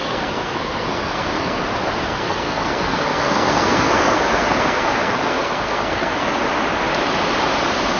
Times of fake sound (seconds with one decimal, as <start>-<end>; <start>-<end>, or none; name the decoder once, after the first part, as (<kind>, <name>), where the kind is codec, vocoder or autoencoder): 0.0-1.6 (codec, SNAC); 2.0-6.4